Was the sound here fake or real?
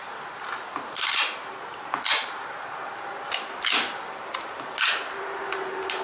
real